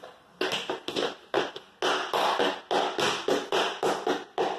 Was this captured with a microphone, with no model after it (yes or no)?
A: yes